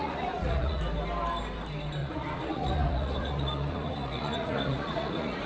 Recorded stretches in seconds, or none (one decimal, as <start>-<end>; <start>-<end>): 0.8-2.0